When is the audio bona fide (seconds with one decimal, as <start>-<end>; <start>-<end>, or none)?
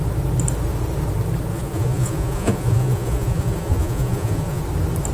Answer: 0.0-1.5; 4.6-5.1